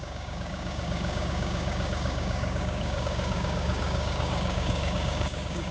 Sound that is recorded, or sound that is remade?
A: remade